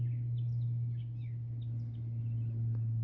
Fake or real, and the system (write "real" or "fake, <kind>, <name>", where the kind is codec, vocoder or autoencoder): real